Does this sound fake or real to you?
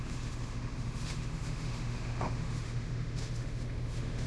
fake